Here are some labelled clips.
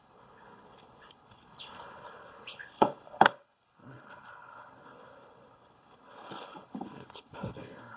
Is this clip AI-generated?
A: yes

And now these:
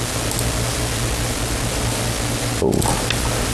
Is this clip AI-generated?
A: no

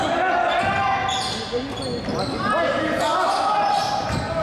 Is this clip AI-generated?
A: no